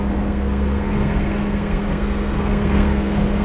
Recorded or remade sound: remade